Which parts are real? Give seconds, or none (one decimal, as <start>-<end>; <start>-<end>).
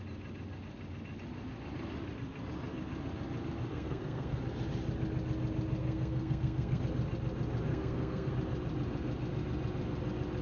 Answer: 0.0-3.7; 4.4-5.8; 6.8-7.7; 8.3-10.4